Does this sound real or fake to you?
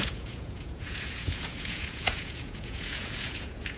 fake